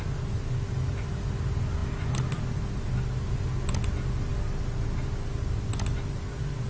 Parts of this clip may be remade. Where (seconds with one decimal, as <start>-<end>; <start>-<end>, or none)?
none